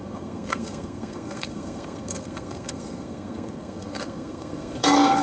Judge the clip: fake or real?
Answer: fake